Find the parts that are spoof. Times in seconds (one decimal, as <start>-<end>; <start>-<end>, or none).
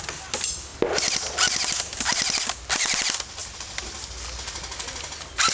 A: none